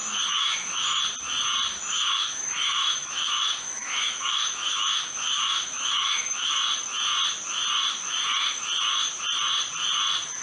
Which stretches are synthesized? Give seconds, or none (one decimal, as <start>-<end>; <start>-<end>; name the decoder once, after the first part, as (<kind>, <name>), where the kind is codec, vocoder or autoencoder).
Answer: 0.0-1.0 (autoencoder, DAC-VAE); 1.7-6.5